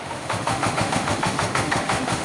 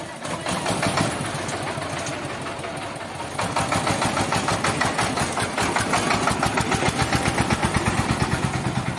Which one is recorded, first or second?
second